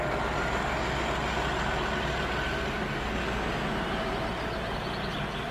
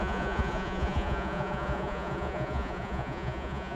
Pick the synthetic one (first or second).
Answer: second